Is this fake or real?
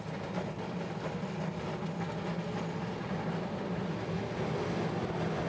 real